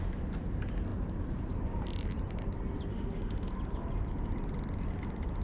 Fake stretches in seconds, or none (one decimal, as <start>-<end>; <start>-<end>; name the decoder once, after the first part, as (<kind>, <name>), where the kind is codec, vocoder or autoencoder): 2.9-3.5 (autoencoder, DAC-VAE)